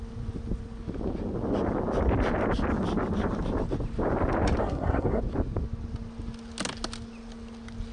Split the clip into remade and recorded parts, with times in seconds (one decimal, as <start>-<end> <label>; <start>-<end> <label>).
0.0-4.6 recorded; 4.6-5.2 remade; 5.2-7.9 recorded